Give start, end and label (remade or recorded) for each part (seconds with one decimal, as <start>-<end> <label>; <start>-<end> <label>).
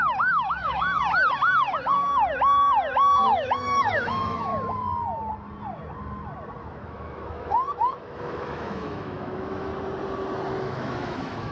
0.0-1.0 remade; 1.0-3.2 recorded; 3.2-4.5 remade; 4.5-6.6 recorded; 6.6-9.7 remade; 9.7-10.6 recorded; 10.6-11.5 remade